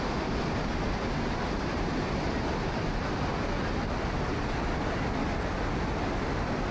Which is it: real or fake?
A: real